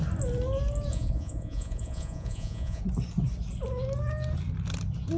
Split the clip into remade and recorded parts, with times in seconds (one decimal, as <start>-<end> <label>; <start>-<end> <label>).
0.0-0.9 recorded; 0.9-2.8 remade; 2.8-5.2 recorded